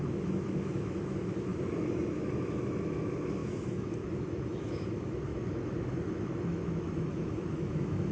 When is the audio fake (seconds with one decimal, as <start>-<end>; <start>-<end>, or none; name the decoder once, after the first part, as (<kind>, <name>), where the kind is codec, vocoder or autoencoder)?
0.0-8.1 (autoencoder, DAC-VAE)